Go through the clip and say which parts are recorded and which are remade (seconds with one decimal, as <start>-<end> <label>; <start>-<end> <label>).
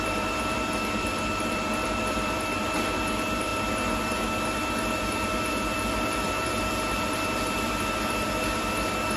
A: 0.0-9.2 remade